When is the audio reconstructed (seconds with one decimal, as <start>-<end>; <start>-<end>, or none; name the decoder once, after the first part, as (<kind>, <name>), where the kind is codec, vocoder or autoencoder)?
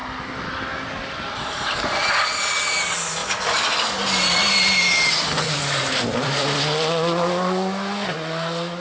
none